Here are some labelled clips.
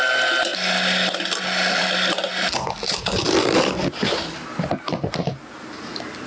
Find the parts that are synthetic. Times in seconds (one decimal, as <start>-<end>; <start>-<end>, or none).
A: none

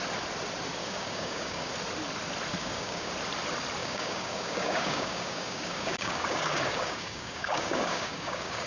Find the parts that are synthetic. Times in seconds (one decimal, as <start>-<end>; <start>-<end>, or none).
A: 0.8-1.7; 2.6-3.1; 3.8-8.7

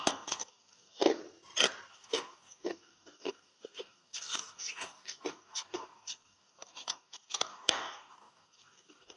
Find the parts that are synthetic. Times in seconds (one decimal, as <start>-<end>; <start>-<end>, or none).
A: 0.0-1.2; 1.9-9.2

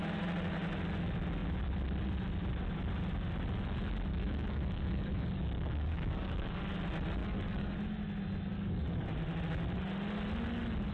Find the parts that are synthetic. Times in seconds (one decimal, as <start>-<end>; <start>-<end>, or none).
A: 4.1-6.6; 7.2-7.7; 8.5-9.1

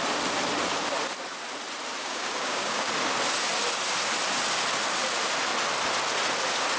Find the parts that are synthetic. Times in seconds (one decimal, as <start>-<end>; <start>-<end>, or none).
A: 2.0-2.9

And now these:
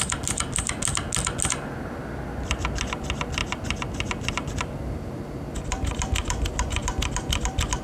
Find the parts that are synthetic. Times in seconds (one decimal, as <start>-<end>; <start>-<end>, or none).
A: none